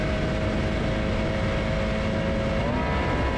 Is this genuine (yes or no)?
yes